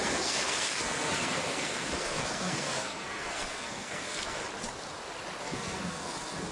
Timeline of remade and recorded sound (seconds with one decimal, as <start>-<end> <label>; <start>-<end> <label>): 0.0-4.4 remade; 4.4-5.4 recorded; 5.4-6.5 remade